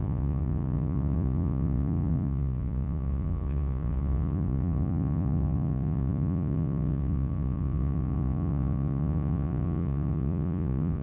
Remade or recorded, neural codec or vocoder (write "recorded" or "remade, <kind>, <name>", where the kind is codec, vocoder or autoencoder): remade, vocoder, Vocos